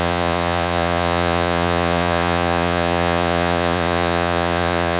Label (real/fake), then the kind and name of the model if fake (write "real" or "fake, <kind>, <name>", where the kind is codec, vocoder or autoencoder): fake, vocoder, Vocos